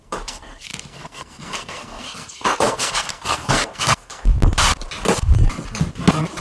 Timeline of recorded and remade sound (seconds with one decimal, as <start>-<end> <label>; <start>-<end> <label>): 0.0-4.3 remade; 4.3-6.4 recorded